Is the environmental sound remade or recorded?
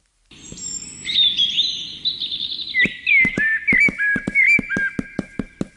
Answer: recorded